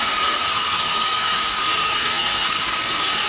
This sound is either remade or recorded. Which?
remade